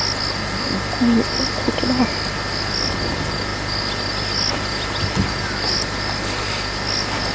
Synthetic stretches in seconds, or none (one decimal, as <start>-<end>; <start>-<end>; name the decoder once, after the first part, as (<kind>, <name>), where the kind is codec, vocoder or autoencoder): none